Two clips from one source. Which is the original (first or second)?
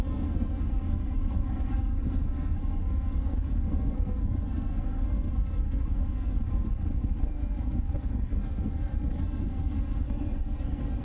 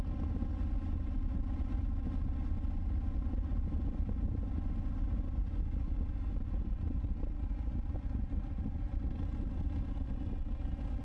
second